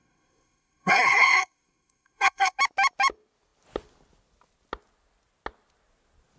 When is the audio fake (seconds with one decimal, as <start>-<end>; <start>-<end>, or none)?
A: 0.0-2.6